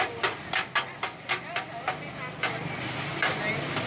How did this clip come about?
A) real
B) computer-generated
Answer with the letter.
A